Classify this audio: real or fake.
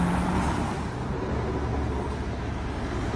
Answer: real